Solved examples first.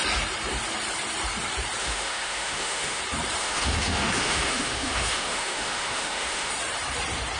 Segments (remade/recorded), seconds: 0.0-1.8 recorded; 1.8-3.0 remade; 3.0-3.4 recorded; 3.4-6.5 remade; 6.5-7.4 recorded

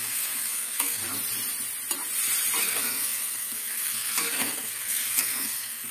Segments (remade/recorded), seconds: 0.0-1.0 remade; 1.0-2.6 recorded; 2.6-5.9 remade

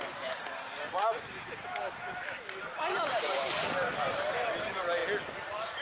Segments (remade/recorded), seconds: 0.0-5.8 recorded

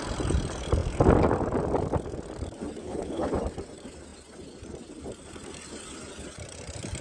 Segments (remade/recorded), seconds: 0.0-2.8 recorded; 2.8-3.3 remade; 3.3-7.0 recorded